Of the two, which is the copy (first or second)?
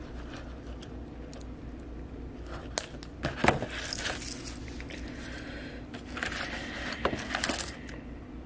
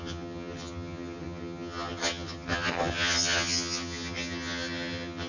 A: second